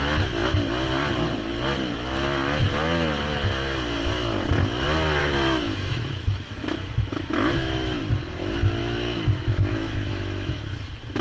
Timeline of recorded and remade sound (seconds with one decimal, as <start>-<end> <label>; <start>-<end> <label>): 0.0-5.2 recorded; 5.2-8.0 remade; 8.0-8.8 recorded; 8.8-10.6 remade; 10.6-11.2 recorded